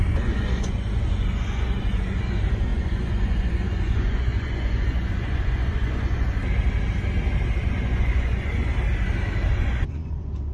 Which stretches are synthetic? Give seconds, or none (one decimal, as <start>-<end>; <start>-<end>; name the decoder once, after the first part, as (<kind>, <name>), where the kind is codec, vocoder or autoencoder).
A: 0.0-6.4 (vocoder, Vocos); 7.6-8.7; 9.5-10.5